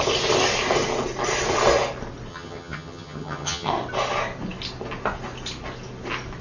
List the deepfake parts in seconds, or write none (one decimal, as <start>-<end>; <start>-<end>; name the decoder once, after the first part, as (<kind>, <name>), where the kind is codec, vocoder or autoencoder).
2.3-3.7 (vocoder, HiFi-GAN)